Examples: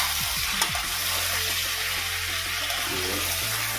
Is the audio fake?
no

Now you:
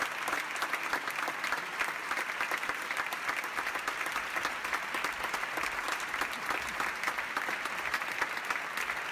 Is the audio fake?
no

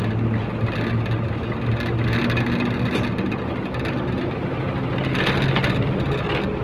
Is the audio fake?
no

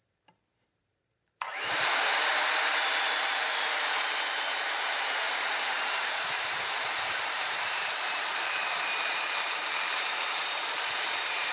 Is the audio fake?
yes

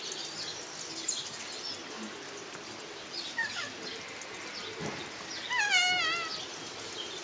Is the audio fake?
no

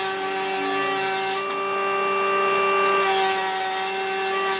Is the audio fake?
no